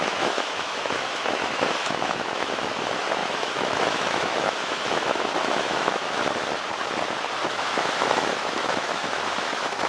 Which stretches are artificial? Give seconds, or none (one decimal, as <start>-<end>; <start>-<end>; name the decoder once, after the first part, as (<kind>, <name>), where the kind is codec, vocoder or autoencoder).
0.0-6.2 (autoencoder, DAC-VAE); 7.5-9.9